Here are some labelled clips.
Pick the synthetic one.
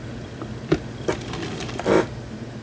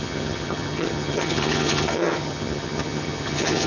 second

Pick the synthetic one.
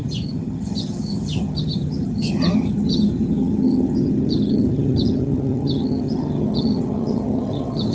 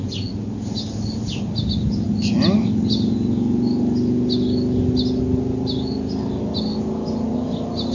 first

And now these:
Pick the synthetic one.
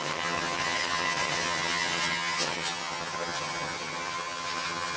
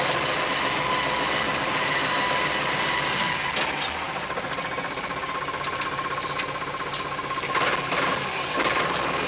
first